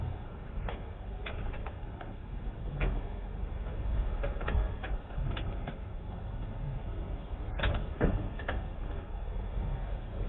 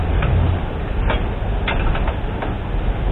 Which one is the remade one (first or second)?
first